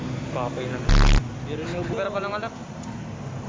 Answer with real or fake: real